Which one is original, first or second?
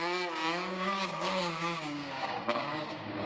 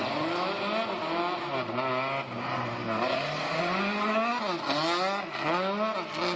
second